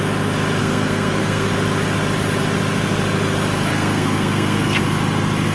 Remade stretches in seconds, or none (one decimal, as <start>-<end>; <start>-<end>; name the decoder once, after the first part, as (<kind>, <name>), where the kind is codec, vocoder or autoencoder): 0.6-1.5 (codec, SNAC); 3.7-4.8